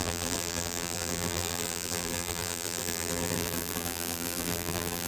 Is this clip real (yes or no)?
no